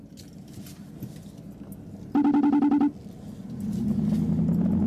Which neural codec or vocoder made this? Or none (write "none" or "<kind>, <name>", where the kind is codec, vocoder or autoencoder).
none